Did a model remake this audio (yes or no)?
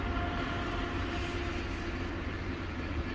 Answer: no